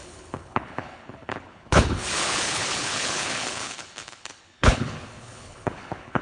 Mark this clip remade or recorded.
remade